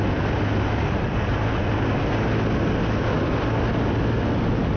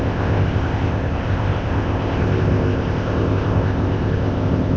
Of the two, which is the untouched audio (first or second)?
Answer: first